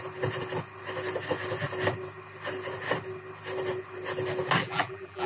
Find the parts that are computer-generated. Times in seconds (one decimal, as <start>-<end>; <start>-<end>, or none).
4.6-5.3